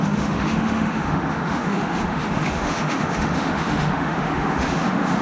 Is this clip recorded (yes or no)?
no